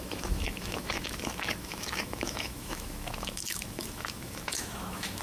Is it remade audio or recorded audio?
remade